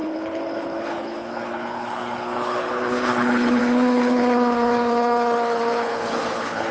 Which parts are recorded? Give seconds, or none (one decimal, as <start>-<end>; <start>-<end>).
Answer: none